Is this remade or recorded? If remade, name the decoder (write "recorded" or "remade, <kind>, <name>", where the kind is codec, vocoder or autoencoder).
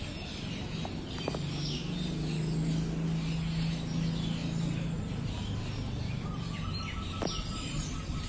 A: recorded